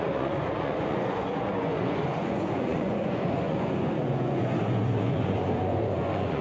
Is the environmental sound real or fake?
fake